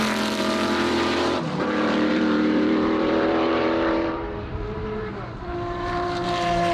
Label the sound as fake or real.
fake